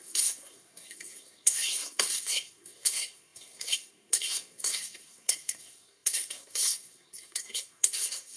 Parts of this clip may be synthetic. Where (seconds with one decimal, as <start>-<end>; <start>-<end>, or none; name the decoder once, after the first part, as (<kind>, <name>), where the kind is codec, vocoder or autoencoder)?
0.0-8.4 (codec, SNAC)